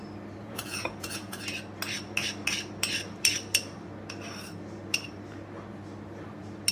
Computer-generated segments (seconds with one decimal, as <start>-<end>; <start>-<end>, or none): 0.4-1.4